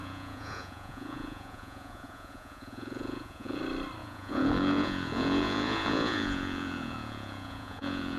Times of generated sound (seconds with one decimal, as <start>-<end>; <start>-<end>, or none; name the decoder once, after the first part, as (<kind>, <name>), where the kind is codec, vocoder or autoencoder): 0.0-3.6 (vocoder, Vocos); 4.0-8.2